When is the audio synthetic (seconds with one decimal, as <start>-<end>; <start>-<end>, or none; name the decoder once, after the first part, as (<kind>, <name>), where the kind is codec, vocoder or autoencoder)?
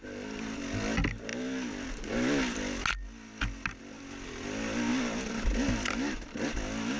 none